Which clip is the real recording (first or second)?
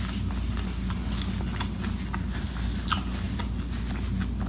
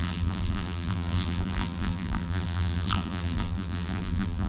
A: first